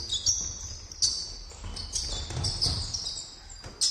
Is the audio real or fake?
real